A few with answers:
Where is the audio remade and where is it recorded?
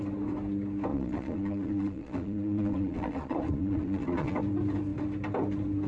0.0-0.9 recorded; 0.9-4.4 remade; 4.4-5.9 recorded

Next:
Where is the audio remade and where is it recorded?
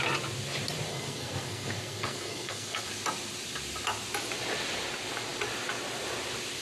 0.0-0.9 recorded; 0.9-2.9 remade; 2.9-6.6 recorded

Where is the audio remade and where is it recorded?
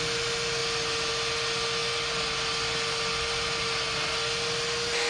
0.0-5.1 recorded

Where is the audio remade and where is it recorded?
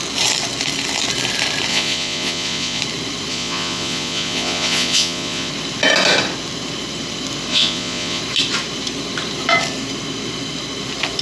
0.0-1.7 recorded; 1.7-2.8 remade; 2.8-3.3 recorded; 3.3-5.5 remade; 5.5-7.5 recorded; 7.5-8.2 remade; 8.2-11.2 recorded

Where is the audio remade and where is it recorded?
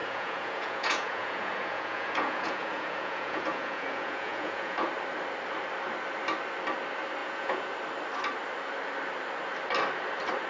0.0-4.9 remade; 4.9-7.2 recorded; 7.2-7.7 remade; 7.7-10.5 recorded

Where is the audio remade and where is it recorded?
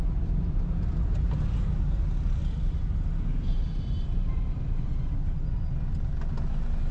0.0-3.5 recorded; 3.5-4.9 remade; 4.9-6.9 recorded